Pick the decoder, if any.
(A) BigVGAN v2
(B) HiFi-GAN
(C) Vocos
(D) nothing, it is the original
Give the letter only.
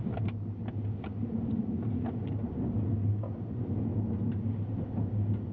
D